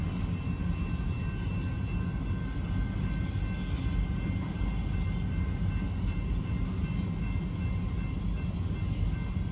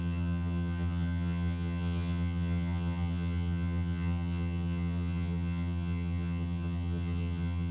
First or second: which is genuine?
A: first